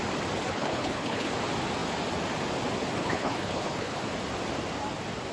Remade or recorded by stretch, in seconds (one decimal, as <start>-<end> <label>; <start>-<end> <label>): 0.0-0.5 recorded; 0.5-1.3 remade; 1.3-3.0 recorded; 3.0-4.0 remade; 4.0-5.3 recorded